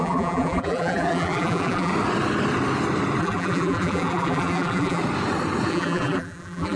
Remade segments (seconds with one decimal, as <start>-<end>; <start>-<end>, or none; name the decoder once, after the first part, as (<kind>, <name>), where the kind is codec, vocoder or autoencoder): 0.0-1.9 (vocoder, BigVGAN v2); 3.2-5.0; 5.7-6.8